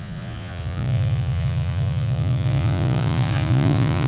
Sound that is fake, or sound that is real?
fake